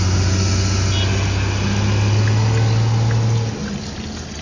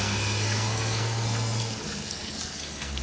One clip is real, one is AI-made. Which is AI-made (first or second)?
second